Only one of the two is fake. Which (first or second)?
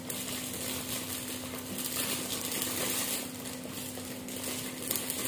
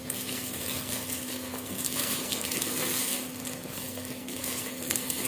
second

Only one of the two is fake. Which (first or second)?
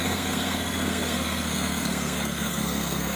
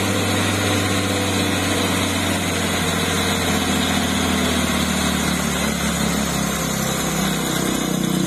first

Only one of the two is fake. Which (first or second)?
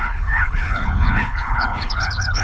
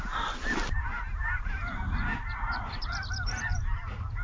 first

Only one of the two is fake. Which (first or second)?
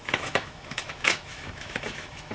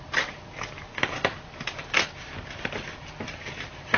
first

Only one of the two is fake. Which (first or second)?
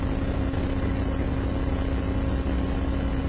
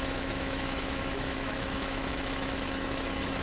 second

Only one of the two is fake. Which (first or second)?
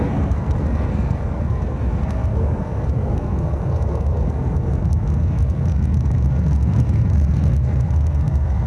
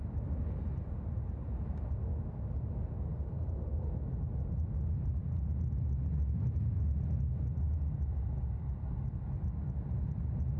first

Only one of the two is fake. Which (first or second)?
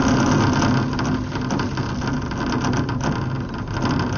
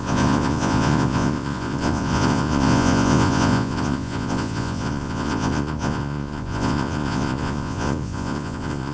second